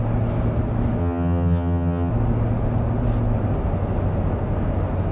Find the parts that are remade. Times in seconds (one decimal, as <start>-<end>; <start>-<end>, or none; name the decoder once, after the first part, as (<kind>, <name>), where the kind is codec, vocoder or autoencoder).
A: 1.0-2.1 (vocoder, HiFi-GAN)